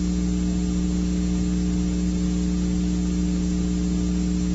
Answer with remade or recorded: recorded